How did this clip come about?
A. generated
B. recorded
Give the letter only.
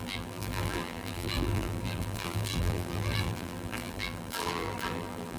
A